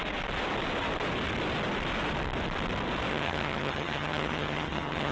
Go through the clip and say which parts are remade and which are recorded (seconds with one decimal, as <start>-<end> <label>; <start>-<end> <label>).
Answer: 0.0-3.1 recorded; 3.1-5.1 remade